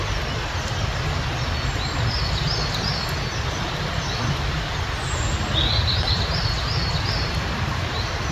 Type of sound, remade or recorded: recorded